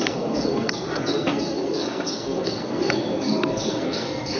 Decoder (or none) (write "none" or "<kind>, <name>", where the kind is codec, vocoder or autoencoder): codec, SNAC